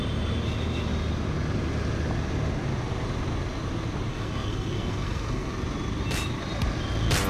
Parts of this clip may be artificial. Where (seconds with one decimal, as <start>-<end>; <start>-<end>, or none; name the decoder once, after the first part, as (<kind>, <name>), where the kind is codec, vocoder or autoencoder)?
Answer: 4.1-5.5 (codec, SNAC)